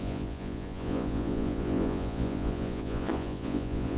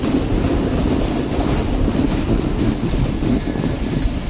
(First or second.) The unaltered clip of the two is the second